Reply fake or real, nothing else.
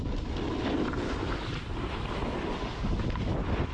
real